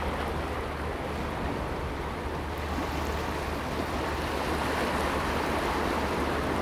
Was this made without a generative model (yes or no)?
yes